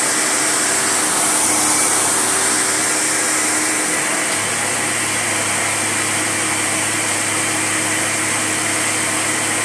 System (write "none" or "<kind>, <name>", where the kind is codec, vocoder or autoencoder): none